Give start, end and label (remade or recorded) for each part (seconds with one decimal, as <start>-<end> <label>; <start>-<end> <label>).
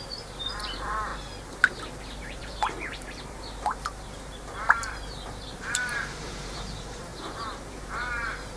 0.0-1.1 remade; 1.1-2.2 recorded; 2.2-8.6 remade